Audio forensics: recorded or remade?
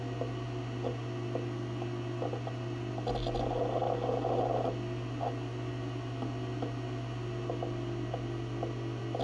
recorded